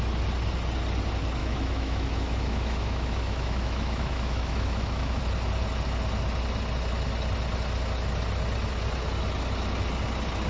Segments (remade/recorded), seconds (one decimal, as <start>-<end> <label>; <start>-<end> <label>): 0.0-1.4 recorded; 1.4-5.2 remade; 5.2-10.5 recorded